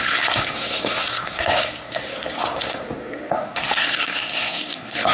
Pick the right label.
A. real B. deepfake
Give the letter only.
B